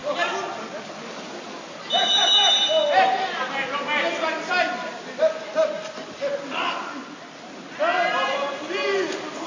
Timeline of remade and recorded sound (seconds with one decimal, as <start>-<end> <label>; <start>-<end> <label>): 0.0-9.5 recorded